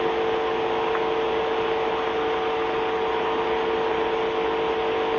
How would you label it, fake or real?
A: real